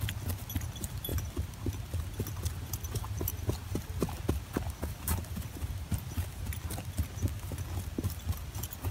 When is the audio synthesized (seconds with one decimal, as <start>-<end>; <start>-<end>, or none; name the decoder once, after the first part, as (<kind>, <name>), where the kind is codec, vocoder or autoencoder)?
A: none